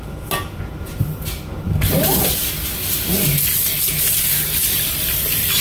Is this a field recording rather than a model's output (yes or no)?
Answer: yes